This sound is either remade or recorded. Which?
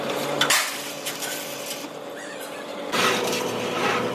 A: remade